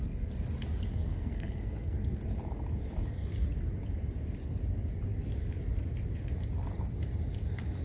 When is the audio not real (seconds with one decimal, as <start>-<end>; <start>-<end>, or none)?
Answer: 0.9-2.2